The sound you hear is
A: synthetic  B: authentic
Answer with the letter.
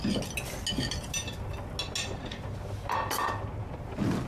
B